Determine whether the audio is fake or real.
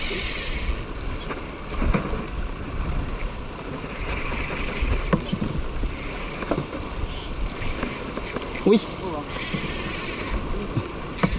real